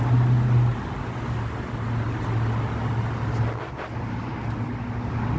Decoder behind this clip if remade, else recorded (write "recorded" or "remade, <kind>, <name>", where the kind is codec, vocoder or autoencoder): recorded